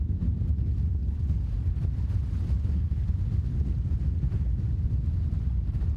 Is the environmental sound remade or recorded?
recorded